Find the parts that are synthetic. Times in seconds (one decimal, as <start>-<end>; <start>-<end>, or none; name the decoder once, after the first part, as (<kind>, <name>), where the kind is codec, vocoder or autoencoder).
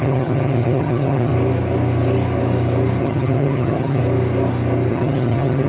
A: 0.0-1.3 (vocoder, HiFi-GAN); 3.0-4.0; 4.9-5.7